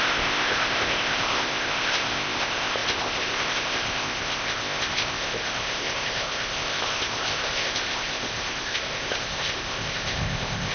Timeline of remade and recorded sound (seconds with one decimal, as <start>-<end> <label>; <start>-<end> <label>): 0.0-10.7 remade